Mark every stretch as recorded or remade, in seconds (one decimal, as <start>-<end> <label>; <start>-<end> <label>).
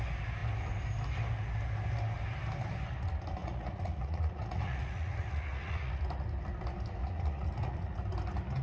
0.0-3.4 recorded; 3.4-6.0 remade; 6.0-7.0 recorded; 7.0-8.0 remade; 8.0-8.6 recorded